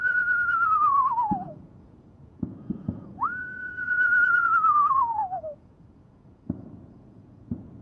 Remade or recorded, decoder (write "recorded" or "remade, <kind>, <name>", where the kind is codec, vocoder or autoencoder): remade, vocoder, Vocos